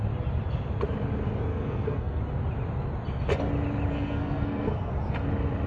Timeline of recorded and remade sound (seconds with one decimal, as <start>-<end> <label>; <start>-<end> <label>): 0.0-1.5 recorded; 1.5-2.2 remade; 2.2-3.9 recorded; 3.9-4.9 remade; 4.9-5.7 recorded